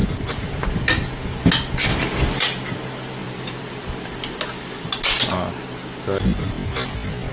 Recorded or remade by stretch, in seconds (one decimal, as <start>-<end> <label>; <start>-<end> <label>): 0.0-1.3 remade; 1.3-1.9 recorded; 1.9-2.4 remade; 2.4-3.2 recorded; 3.2-6.4 remade; 6.4-7.3 recorded